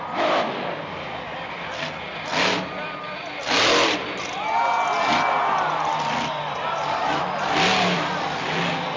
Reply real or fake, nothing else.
real